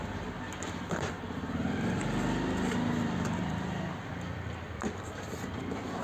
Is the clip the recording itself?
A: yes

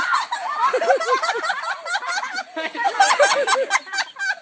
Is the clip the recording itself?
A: yes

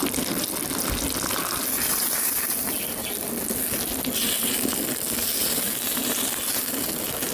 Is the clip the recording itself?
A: yes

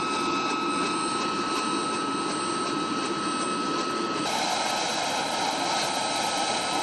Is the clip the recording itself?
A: yes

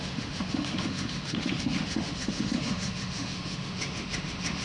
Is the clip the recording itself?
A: no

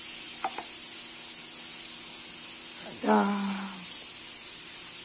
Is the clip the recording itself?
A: yes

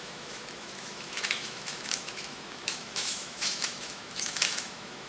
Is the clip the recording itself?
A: no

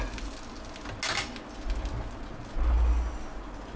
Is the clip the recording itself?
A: yes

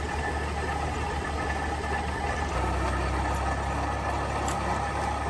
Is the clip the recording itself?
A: yes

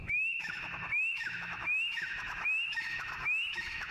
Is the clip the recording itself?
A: no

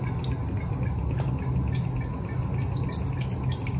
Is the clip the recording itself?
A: yes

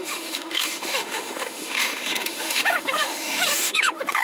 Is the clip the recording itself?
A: no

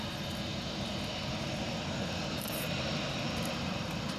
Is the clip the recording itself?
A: yes